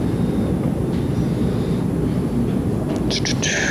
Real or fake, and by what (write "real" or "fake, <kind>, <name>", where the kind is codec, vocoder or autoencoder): real